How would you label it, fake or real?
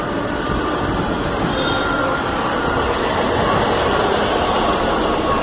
fake